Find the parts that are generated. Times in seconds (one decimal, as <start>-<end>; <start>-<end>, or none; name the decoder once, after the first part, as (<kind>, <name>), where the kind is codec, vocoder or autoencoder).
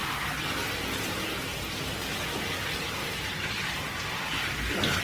none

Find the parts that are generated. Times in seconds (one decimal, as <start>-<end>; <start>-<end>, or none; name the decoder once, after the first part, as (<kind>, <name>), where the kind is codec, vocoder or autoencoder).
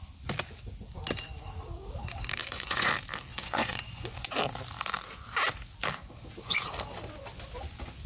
2.4-2.9 (vocoder, Vocos); 3.3-4.3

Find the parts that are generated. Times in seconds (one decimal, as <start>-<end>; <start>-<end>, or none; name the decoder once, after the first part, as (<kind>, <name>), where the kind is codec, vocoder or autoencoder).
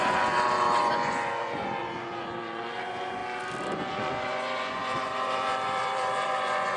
0.0-3.2 (vocoder, Vocos); 3.8-6.8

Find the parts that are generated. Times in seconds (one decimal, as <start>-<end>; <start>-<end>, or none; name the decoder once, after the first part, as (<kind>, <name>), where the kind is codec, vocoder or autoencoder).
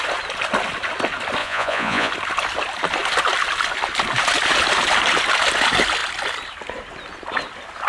1.4-2.1 (vocoder, Vocos)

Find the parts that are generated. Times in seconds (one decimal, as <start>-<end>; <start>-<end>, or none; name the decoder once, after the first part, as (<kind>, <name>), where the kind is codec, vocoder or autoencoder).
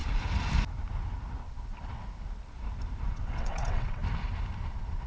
3.1-4.0 (vocoder, WaveNeXt)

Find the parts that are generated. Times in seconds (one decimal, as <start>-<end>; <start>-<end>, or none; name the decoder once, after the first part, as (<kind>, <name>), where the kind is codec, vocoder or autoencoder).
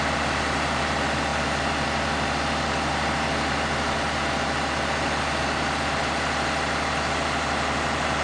none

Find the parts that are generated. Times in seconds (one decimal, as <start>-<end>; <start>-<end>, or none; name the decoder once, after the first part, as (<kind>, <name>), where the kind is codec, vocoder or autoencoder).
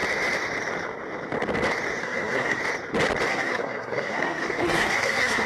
2.0-2.6 (codec, SNAC); 3.3-5.5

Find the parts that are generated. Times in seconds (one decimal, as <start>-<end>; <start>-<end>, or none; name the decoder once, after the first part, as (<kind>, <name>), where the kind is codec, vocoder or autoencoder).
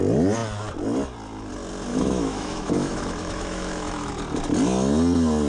1.9-4.1 (autoencoder, DAC-VAE)